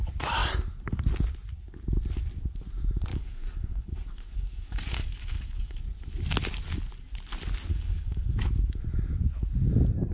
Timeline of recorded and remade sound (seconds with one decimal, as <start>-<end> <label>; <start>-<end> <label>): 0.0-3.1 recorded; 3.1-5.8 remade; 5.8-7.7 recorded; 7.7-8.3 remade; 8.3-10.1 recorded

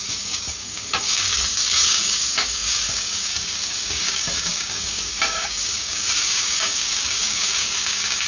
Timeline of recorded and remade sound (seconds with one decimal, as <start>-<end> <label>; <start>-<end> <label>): 0.0-8.3 remade

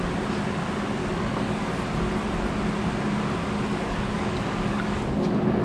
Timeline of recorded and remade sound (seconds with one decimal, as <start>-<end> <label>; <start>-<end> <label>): 0.0-1.0 recorded; 1.0-1.7 remade; 1.7-3.7 recorded; 3.7-5.0 remade; 5.0-5.6 recorded

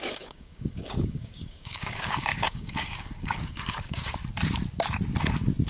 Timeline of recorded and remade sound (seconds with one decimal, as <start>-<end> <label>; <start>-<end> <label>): 0.0-4.2 remade; 4.2-5.7 recorded